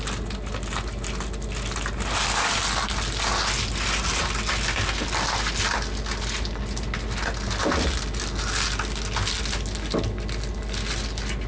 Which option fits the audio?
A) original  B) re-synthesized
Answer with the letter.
A